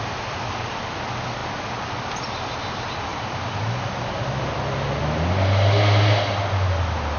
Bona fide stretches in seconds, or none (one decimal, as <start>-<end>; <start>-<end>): 0.0-7.2